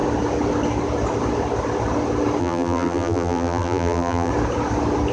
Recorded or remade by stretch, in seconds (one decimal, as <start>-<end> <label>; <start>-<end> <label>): 0.0-2.4 recorded; 2.4-4.3 remade; 4.3-5.1 recorded